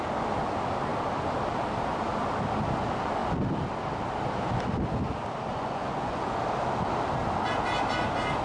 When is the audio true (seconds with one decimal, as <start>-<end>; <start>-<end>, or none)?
0.0-5.5; 6.4-8.4